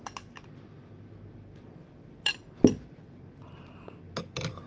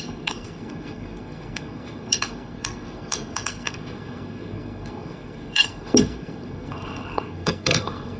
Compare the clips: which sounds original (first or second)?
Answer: first